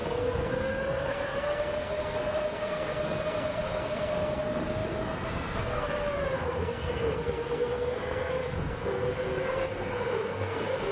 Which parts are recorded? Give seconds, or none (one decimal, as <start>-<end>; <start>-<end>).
none